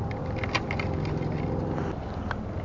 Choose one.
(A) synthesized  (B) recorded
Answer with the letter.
B